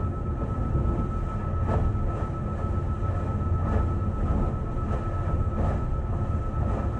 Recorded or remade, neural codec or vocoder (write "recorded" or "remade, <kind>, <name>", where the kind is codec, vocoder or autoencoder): recorded